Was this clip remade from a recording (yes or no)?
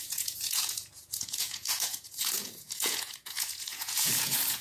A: yes